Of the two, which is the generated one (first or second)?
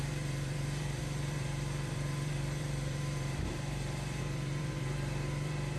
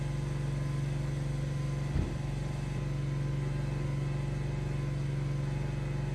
first